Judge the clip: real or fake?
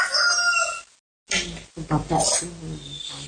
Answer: real